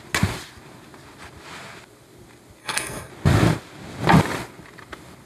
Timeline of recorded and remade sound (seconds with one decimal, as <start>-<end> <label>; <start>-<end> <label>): 0.0-2.6 recorded; 2.6-3.1 remade; 3.1-5.3 recorded